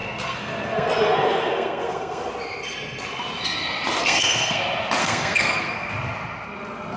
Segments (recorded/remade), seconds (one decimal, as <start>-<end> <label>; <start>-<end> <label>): 0.0-2.3 remade; 2.3-4.0 recorded; 4.0-4.6 remade; 4.6-5.0 recorded; 5.0-5.9 remade; 5.9-7.0 recorded